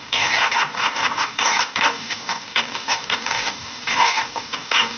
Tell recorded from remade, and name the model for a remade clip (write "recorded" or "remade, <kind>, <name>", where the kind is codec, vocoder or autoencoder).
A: remade, codec, DAC